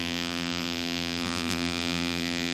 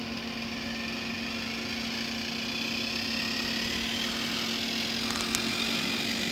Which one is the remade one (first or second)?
first